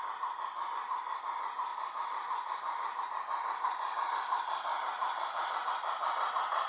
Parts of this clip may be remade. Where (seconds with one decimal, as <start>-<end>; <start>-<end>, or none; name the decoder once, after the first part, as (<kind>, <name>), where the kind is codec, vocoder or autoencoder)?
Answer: 1.7-3.0 (vocoder, BigVGAN v2); 4.7-5.6